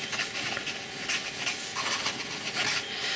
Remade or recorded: recorded